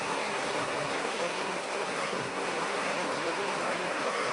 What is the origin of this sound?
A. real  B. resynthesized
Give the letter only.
B